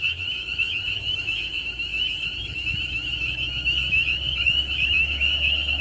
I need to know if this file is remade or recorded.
remade